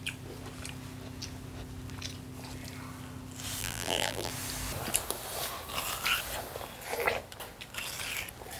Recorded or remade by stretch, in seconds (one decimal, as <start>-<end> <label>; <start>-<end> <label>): 0.0-3.6 recorded; 3.6-4.3 remade; 4.3-8.6 recorded